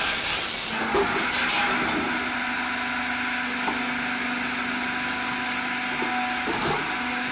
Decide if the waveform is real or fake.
real